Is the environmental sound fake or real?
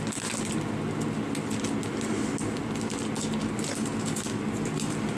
real